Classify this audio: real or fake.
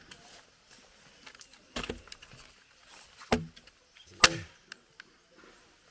real